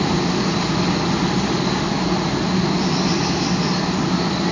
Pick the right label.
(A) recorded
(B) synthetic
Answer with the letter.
A